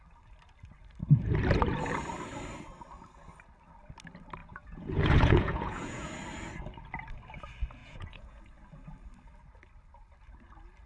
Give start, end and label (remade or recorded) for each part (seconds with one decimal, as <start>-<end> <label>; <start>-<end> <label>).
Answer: 0.0-4.4 recorded; 4.4-6.1 remade; 6.1-7.8 recorded; 7.8-8.4 remade; 8.4-10.9 recorded